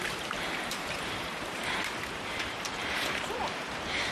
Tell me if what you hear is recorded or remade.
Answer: remade